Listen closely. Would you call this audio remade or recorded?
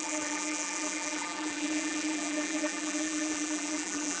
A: remade